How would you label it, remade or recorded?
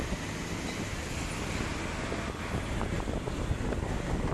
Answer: recorded